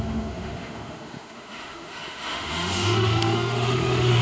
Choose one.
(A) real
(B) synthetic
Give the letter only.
B